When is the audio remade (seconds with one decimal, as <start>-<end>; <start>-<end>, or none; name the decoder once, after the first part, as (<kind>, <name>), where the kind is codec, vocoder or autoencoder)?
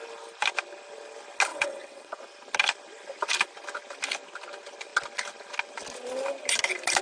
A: 1.5-2.2 (vocoder, WaveNeXt)